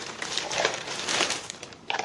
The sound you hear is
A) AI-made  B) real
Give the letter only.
A